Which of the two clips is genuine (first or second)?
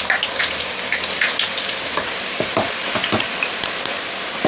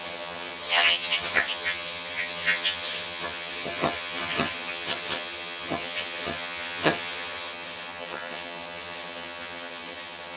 first